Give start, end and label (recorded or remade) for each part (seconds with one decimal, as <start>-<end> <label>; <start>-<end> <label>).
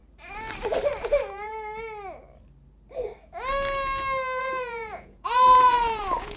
0.0-1.0 recorded; 1.0-1.5 remade; 1.5-4.4 recorded; 4.4-6.4 remade